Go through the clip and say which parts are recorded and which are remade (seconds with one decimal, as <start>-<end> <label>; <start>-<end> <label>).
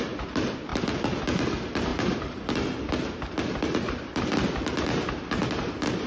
0.0-6.1 recorded